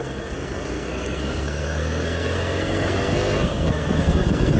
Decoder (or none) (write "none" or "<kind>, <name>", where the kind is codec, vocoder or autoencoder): codec, SNAC